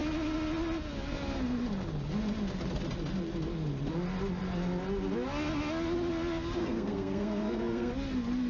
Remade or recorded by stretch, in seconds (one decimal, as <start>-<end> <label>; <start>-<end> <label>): 0.0-6.6 recorded; 6.6-7.9 remade; 7.9-8.5 recorded